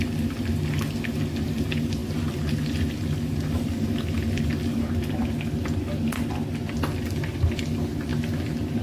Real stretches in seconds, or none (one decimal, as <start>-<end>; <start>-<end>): 0.0-2.0; 4.9-8.1